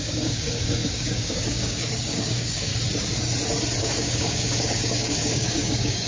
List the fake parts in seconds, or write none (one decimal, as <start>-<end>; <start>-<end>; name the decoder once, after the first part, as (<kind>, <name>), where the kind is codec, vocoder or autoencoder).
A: 0.0-2.7 (codec, DAC); 3.8-6.1